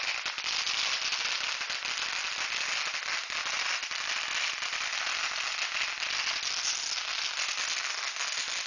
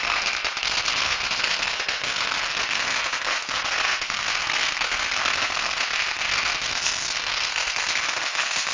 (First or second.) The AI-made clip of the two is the second